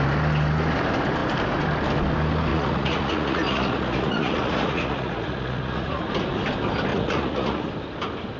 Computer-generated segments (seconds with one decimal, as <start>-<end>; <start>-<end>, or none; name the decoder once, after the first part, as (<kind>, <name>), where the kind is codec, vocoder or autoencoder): 2.5-6.1 (vocoder, Vocos); 6.9-7.7

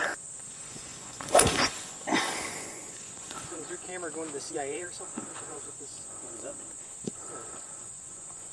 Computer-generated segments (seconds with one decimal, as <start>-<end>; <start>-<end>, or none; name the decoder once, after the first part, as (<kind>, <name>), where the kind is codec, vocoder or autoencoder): 0.0-3.9 (vocoder, Vocos); 4.5-8.5

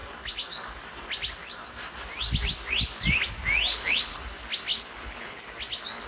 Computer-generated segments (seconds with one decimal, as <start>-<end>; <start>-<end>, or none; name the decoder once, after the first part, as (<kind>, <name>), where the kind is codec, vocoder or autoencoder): 3.7-4.2 (codec, HILCodec); 4.7-5.4

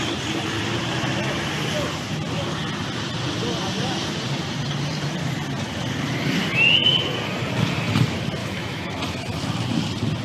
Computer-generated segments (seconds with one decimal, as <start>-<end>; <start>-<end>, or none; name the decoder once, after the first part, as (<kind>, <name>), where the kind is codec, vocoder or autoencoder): 8.4-9.0 (autoencoder, DAC-VAE)